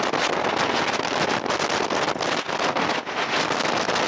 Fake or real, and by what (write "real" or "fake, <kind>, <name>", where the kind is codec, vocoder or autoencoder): real